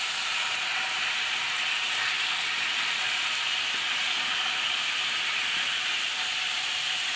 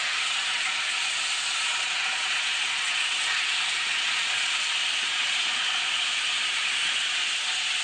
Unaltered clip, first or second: first